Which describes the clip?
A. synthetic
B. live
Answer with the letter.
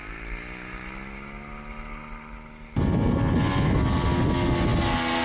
B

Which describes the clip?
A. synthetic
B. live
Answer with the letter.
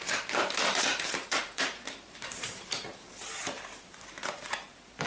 A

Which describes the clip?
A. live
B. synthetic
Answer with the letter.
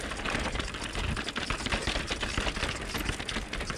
A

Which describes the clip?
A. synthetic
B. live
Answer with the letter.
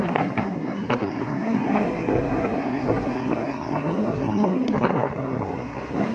A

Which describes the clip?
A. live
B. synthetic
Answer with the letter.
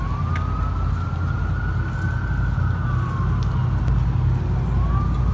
A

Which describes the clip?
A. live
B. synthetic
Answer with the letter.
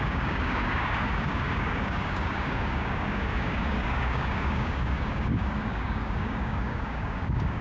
B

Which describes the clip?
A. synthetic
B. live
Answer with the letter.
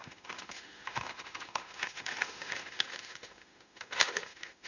A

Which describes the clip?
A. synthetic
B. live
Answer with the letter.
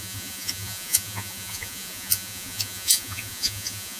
A